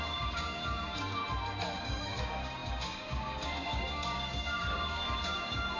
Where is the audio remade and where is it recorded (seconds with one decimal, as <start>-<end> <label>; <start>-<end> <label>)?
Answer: 0.0-1.2 remade; 1.2-1.8 recorded; 1.8-5.8 remade